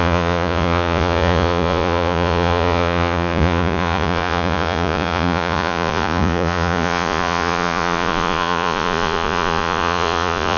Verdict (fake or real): fake